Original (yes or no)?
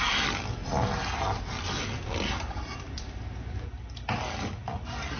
no